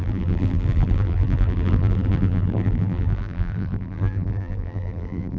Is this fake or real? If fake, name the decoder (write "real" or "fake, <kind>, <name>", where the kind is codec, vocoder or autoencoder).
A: fake, vocoder, BigVGAN v2